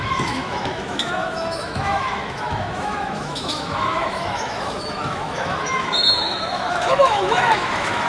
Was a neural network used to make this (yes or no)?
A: yes